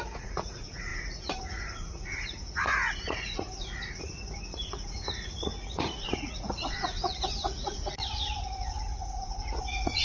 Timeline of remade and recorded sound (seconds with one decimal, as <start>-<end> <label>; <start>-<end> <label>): 0.0-10.0 remade

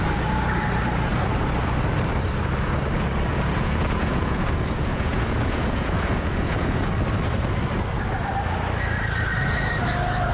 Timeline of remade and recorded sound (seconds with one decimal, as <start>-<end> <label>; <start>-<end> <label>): 0.0-3.3 recorded; 3.3-6.9 remade; 6.9-10.3 recorded